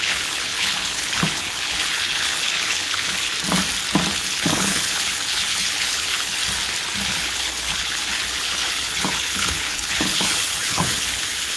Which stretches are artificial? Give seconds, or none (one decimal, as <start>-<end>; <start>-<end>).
0.0-3.3; 4.1-6.4; 7.1-11.6